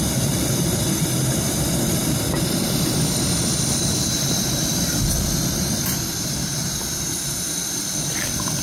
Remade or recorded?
remade